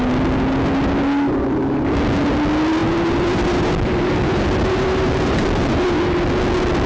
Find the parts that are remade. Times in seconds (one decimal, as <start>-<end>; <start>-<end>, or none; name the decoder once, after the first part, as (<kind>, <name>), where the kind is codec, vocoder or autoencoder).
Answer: 2.8-6.0 (vocoder, BigVGAN v2)